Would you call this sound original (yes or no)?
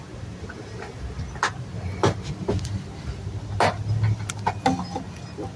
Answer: yes